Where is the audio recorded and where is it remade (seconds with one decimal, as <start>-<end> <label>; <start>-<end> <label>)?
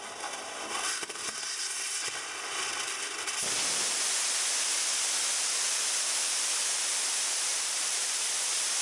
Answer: 0.0-7.5 recorded; 7.5-8.3 remade; 8.3-8.8 recorded